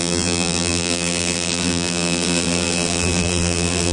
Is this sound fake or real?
fake